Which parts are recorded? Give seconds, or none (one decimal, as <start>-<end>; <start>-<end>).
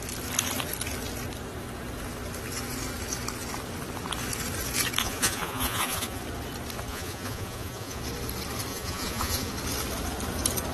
0.0-5.0; 6.2-6.9; 8.0-8.7; 9.5-10.7